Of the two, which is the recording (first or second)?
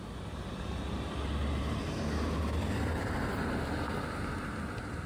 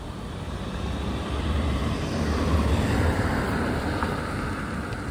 first